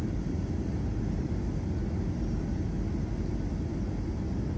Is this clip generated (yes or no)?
no